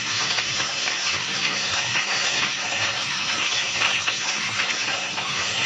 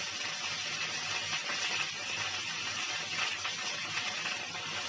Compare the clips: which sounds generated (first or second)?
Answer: first